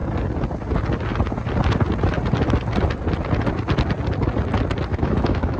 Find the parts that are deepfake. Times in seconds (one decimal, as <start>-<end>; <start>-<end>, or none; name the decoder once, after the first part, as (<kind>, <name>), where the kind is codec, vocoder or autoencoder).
4.9-5.6 (autoencoder, DAC-VAE)